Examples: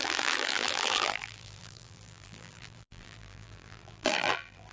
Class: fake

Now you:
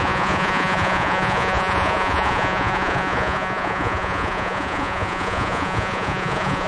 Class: fake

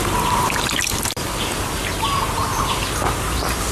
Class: real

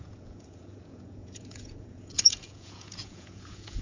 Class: fake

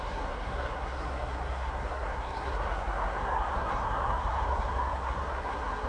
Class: fake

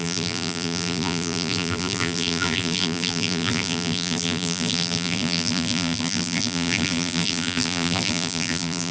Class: fake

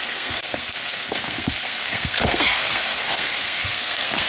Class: fake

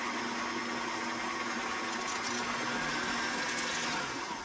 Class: real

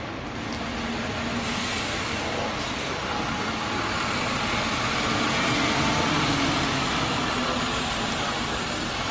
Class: real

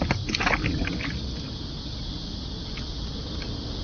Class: real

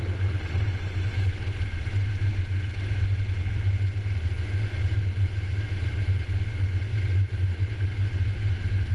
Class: real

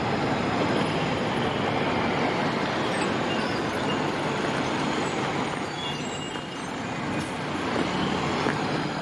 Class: real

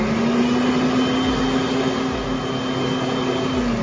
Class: real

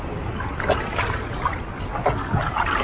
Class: real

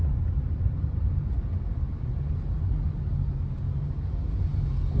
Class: real